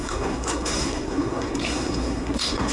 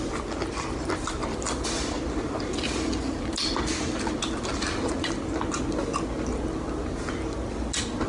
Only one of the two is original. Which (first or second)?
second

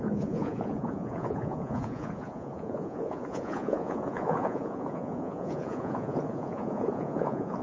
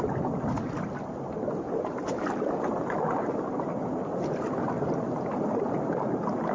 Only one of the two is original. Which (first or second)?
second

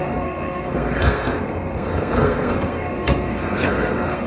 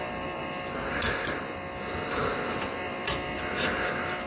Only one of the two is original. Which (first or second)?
second